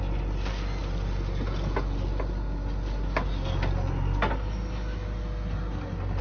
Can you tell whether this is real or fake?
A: real